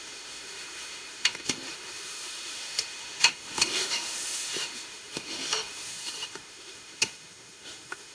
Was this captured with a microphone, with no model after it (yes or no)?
no